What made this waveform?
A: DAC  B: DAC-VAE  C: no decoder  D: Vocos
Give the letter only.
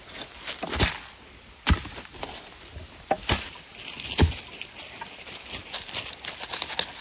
C